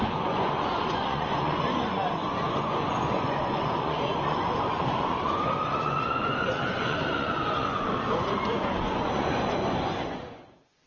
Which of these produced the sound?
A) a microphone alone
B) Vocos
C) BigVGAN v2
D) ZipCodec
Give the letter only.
B